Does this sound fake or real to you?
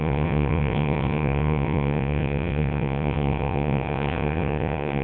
fake